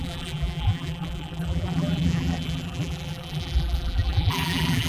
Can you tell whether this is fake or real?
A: fake